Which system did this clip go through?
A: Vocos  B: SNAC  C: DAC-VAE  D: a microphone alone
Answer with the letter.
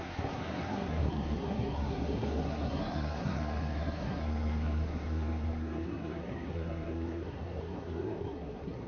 B